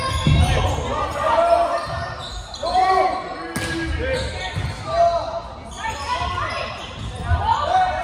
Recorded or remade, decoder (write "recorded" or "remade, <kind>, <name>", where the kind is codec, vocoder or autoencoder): recorded